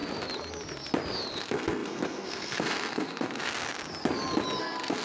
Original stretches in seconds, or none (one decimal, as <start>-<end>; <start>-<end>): 0.0-1.4; 3.5-4.6